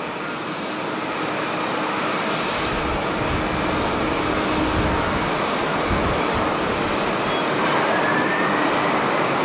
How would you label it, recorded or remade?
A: recorded